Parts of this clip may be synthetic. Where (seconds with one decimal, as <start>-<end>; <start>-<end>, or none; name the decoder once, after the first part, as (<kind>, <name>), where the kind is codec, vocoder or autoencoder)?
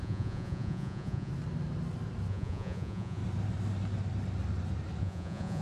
0.0-1.3 (vocoder, Vocos); 2.3-3.2; 5.0-5.6